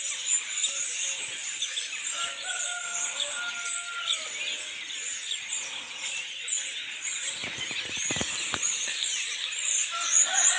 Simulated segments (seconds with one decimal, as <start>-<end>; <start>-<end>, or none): none